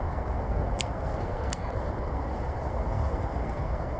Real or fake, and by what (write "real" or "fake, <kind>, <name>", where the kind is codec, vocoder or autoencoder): fake, codec, SNAC